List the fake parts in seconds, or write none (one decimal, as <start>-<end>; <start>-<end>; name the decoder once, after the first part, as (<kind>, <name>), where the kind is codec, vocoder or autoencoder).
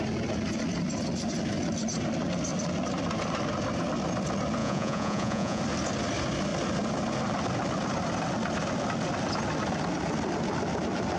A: 4.6-5.6 (vocoder, Vocos)